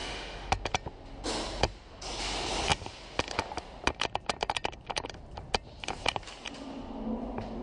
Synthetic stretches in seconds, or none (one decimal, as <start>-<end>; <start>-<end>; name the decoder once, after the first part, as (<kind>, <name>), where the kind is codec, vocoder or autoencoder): 0.0-0.5 (autoencoder, DAC-VAE)